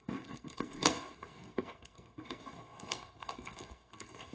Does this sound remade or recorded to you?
remade